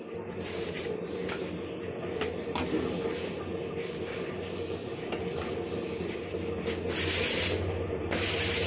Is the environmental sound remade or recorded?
recorded